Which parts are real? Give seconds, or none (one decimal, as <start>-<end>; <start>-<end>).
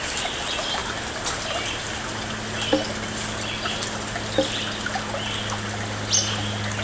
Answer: 0.0-6.8